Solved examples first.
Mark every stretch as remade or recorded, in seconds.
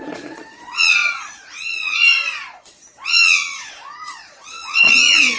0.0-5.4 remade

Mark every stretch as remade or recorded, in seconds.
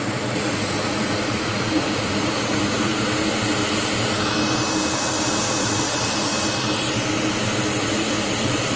0.0-2.9 remade; 2.9-5.4 recorded; 5.4-6.3 remade; 6.3-7.8 recorded; 7.8-8.8 remade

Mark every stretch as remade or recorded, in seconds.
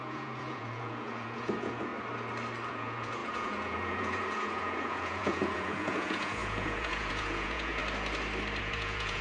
0.0-1.9 remade; 1.9-2.7 recorded; 2.7-7.8 remade; 7.8-8.6 recorded; 8.6-9.2 remade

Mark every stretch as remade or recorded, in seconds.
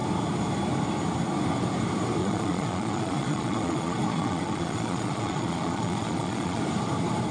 0.0-2.2 recorded; 2.2-6.6 remade; 6.6-7.3 recorded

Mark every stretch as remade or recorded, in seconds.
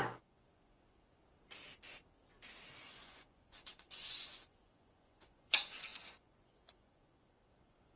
0.0-1.2 remade; 1.2-2.8 recorded; 2.8-8.0 remade